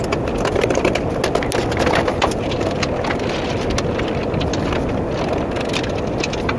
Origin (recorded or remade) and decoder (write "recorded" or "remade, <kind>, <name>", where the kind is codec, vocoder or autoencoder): recorded